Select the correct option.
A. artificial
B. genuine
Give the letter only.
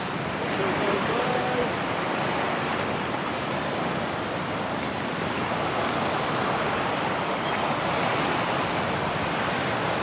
A